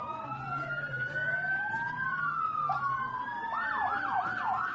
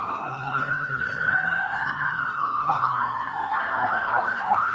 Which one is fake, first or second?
second